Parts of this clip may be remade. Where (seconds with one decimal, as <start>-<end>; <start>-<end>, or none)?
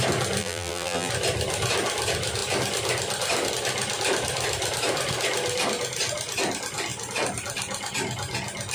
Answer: 0.4-1.1